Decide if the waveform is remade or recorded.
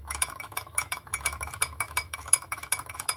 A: remade